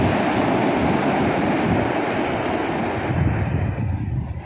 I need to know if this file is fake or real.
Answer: real